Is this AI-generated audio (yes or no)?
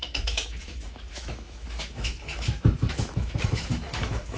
yes